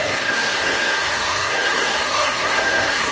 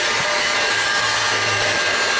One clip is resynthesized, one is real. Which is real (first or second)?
second